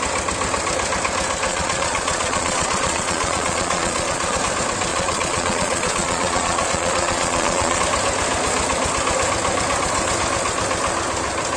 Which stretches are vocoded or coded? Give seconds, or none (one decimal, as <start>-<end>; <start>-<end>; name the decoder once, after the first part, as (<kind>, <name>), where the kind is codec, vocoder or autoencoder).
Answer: 1.5-4.4 (vocoder, Vocos); 4.9-7.8